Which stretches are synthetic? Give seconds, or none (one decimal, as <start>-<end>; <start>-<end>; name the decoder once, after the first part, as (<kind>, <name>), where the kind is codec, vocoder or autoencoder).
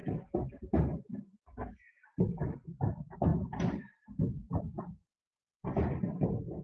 3.3-4.6 (vocoder, BigVGAN v2); 5.1-6.0